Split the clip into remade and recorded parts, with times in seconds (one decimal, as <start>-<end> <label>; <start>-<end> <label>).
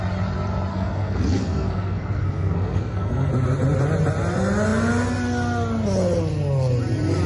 0.0-0.7 recorded; 0.7-3.3 remade; 3.3-7.3 recorded